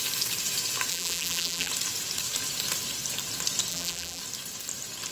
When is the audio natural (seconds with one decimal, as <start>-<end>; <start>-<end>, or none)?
0.0-0.9; 1.7-3.7; 4.2-5.1